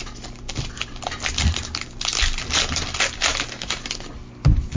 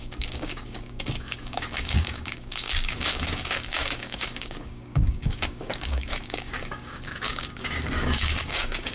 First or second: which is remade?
second